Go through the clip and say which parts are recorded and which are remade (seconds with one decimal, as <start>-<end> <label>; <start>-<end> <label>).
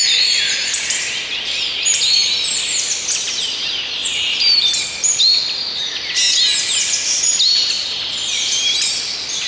0.0-4.0 recorded; 4.0-5.2 remade; 5.2-9.5 recorded